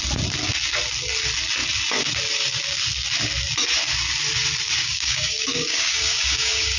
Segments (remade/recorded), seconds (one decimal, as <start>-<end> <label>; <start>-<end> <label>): 0.0-4.8 recorded; 4.8-6.8 remade